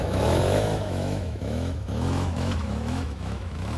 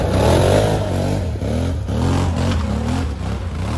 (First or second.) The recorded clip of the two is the second